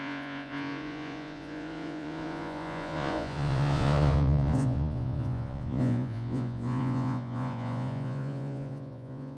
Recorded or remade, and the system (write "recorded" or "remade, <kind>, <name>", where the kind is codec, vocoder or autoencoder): remade, vocoder, Vocos